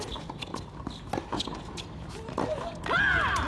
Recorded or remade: recorded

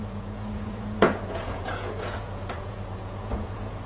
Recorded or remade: remade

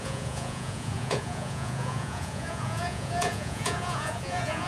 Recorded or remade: remade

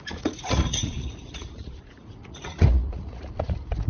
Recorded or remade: remade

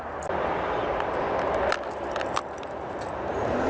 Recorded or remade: recorded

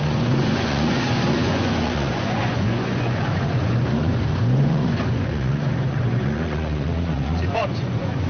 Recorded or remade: remade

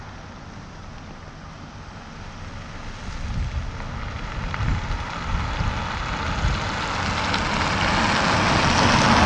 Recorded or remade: recorded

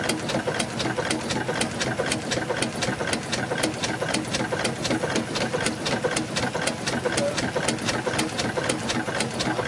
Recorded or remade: recorded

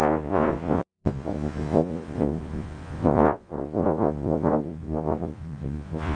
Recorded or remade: remade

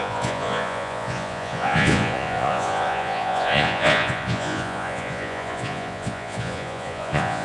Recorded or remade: remade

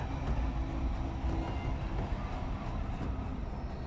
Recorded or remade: recorded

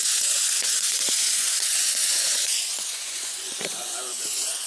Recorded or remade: remade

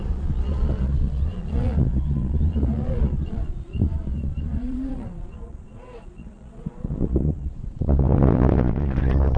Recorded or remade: remade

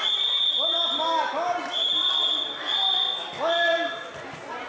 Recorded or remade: recorded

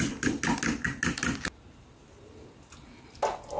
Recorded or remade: recorded